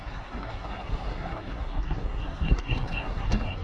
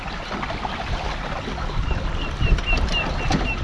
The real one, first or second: second